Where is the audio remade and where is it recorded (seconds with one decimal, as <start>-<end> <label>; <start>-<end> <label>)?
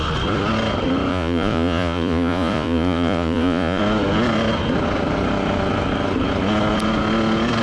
0.0-1.1 recorded; 1.1-3.8 remade; 3.8-7.6 recorded